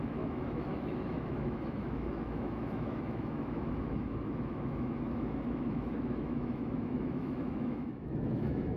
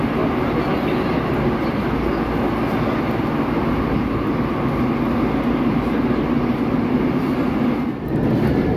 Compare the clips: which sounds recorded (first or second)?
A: second